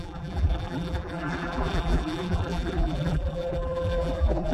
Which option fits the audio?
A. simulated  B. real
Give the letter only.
A